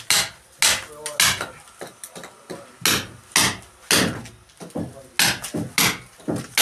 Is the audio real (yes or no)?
yes